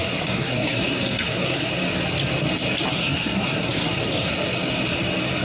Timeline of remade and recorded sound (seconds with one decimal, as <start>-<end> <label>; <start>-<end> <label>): 0.0-1.7 remade; 1.7-2.9 recorded; 2.9-4.3 remade; 4.3-5.4 recorded